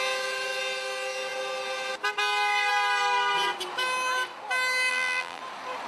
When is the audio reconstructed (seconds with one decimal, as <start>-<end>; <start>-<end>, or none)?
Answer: 4.9-5.4